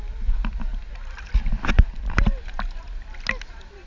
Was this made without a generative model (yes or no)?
yes